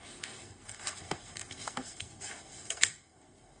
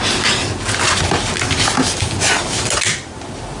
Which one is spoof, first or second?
first